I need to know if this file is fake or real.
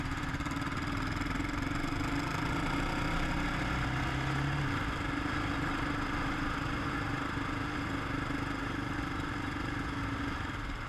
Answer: real